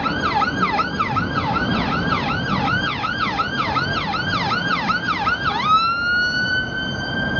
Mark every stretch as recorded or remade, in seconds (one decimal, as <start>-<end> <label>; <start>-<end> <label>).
0.0-7.4 recorded